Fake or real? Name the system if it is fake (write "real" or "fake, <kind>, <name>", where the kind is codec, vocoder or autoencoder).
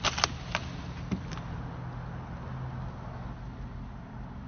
real